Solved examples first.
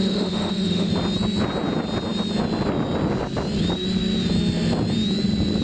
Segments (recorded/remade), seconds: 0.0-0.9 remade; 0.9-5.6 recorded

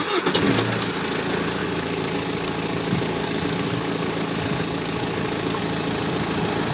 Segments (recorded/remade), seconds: 0.0-1.6 recorded; 1.6-5.6 remade; 5.6-6.7 recorded

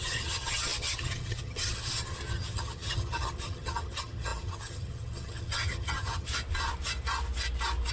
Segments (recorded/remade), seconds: 0.0-6.3 remade; 6.3-7.9 recorded

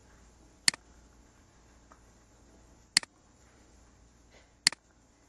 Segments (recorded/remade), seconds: 0.0-3.0 recorded; 3.0-3.7 remade; 3.7-5.3 recorded

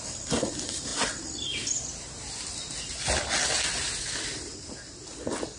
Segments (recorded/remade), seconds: 0.0-5.6 recorded

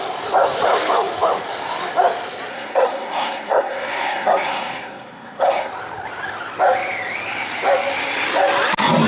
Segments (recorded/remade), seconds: 0.0-2.5 recorded; 2.5-5.7 remade; 5.7-9.1 recorded